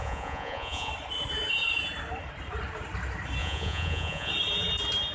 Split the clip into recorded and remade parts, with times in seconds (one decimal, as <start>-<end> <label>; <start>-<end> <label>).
0.0-0.9 remade; 0.9-3.4 recorded; 3.4-4.3 remade; 4.3-5.1 recorded